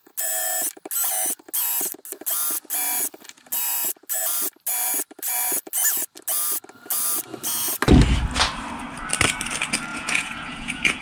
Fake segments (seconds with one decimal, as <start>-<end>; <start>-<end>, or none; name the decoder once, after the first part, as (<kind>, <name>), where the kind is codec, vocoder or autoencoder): 9.9-11.0 (vocoder, Vocos)